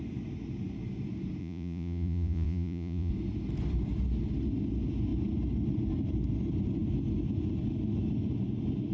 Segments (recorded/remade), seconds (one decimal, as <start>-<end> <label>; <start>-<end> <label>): 0.0-1.4 recorded; 1.4-3.1 remade; 3.1-8.9 recorded